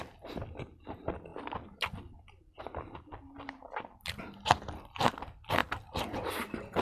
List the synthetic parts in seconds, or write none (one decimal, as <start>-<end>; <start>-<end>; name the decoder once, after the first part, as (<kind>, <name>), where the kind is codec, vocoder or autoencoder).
none